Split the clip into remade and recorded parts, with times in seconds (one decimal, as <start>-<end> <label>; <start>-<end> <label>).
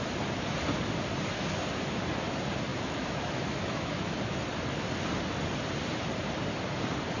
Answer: 0.0-2.7 recorded; 2.7-4.2 remade; 4.2-7.2 recorded